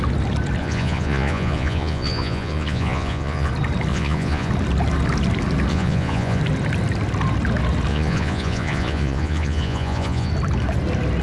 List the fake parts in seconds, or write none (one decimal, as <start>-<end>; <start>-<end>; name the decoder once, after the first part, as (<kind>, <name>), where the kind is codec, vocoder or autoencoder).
0.6-3.5 (vocoder, Vocos); 3.9-4.5; 5.7-6.4; 7.9-10.3